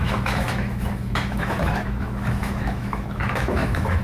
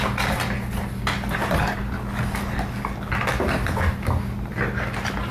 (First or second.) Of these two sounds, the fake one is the first